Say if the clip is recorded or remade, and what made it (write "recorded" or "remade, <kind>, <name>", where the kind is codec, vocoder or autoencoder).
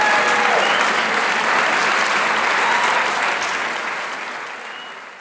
recorded